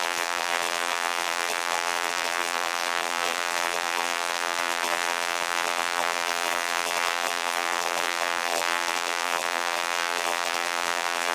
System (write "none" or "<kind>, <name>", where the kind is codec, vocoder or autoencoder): vocoder, BigVGAN v2